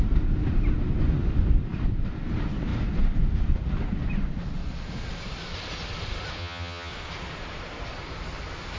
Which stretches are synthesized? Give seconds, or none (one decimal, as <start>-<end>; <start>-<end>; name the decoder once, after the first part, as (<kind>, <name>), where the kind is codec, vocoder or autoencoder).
6.4-6.9 (vocoder, HiFi-GAN)